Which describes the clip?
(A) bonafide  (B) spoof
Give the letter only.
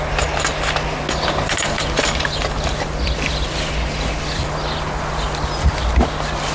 A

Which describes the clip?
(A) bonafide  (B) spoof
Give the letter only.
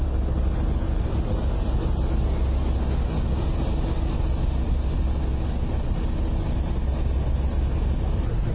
A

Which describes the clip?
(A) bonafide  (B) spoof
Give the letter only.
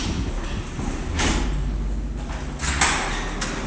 A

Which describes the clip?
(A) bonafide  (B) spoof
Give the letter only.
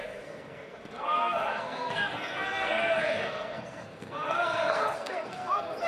B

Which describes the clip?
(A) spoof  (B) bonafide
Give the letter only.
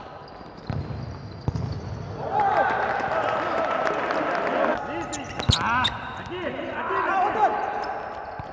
B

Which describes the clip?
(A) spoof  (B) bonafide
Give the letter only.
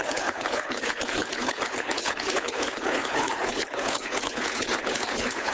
A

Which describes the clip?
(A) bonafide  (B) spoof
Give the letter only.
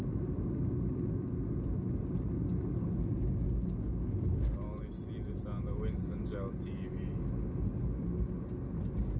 A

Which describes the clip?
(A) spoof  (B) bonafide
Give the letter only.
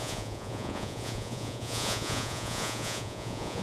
A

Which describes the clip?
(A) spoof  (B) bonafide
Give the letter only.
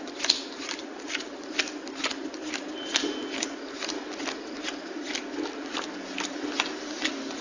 B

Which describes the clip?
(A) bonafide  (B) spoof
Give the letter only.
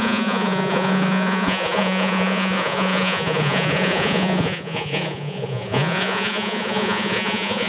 B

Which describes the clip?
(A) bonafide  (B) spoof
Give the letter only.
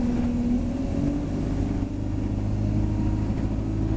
A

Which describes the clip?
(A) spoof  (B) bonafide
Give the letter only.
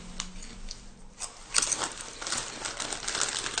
B